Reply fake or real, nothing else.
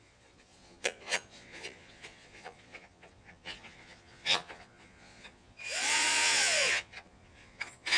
fake